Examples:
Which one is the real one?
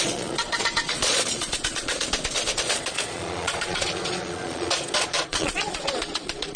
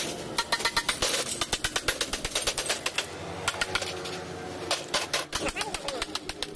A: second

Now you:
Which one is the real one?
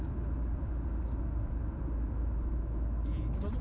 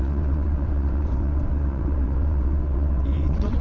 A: first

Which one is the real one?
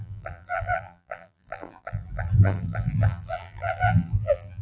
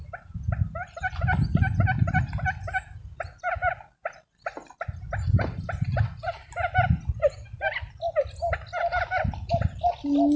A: second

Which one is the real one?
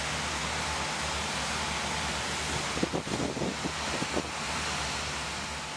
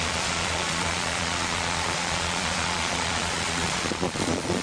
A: first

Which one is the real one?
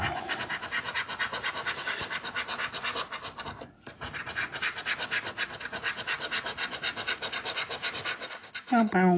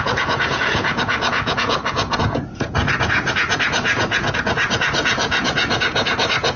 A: first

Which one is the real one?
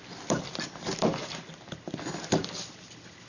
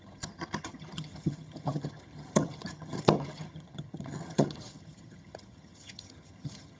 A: first